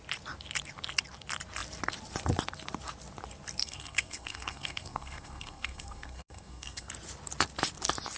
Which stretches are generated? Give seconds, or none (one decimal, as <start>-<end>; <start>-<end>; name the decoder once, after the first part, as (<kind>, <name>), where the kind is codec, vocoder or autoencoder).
3.6-6.9 (codec, SNAC)